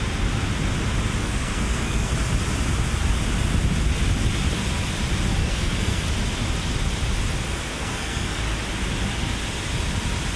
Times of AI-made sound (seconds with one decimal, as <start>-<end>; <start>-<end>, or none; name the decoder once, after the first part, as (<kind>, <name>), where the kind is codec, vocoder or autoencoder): 1.2-2.1 (codec, SNAC); 5.4-6.1; 7.7-8.4